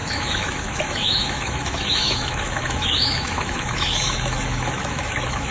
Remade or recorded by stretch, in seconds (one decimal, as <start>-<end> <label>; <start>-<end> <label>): 0.0-5.5 remade